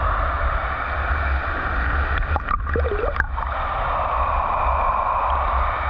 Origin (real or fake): real